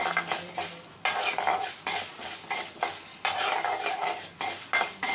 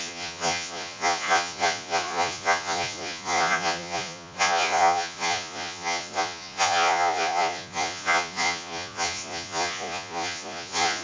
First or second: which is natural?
first